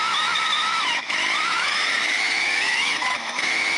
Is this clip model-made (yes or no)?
yes